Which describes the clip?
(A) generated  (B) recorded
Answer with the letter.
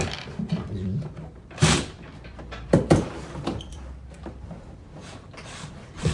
A